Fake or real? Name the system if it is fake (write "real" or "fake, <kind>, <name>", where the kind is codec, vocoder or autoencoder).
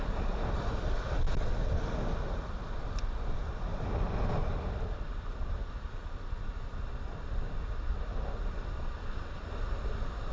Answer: real